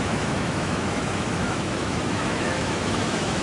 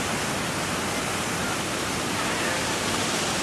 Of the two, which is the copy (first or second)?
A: first